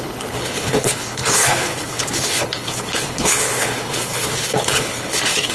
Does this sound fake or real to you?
fake